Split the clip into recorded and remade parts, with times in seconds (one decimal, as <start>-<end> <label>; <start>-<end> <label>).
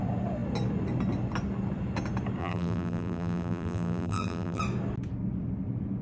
0.0-2.4 recorded; 2.4-4.6 remade; 4.6-6.0 recorded